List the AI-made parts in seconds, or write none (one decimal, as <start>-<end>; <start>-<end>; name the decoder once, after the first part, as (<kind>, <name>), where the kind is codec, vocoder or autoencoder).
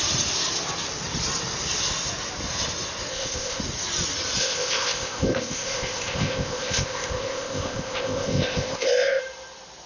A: 3.1-3.6 (codec, ZipCodec); 4.4-9.2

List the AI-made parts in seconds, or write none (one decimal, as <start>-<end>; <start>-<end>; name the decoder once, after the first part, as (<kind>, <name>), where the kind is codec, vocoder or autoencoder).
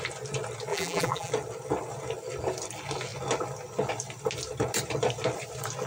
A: 0.7-1.3 (vocoder, BigVGAN v2)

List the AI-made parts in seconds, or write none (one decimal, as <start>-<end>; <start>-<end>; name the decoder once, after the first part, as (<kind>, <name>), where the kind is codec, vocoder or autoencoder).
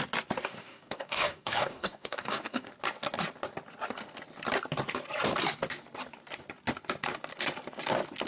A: 0.6-2.7 (codec, DAC)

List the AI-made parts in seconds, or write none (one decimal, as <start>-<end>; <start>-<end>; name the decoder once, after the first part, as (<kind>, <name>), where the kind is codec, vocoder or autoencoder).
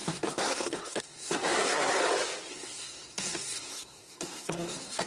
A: 0.0-1.9 (codec, SNAC); 2.5-5.1